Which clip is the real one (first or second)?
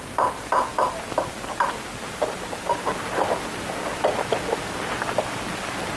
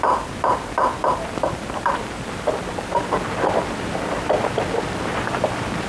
first